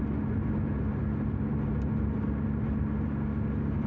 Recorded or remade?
recorded